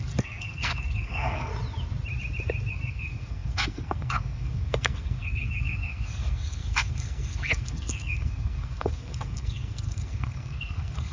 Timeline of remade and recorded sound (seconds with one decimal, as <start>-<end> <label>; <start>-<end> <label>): 0.0-1.5 remade; 1.5-2.7 recorded; 2.7-11.1 remade